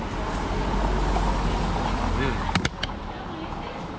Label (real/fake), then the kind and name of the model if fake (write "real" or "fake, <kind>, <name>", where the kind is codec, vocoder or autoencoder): real